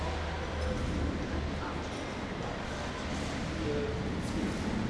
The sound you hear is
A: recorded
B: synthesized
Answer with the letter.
A